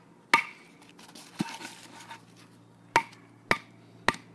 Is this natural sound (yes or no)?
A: yes